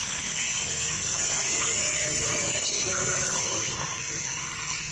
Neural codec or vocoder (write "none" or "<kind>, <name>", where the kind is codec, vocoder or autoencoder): codec, SNAC